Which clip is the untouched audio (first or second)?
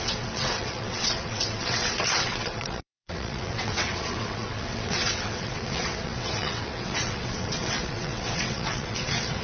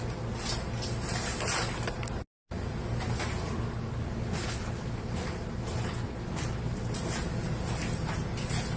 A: second